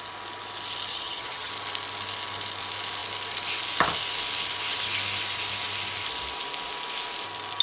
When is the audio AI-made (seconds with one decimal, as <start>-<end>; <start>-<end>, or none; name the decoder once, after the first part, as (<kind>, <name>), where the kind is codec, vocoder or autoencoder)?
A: 0.9-1.5 (vocoder, HiFi-GAN)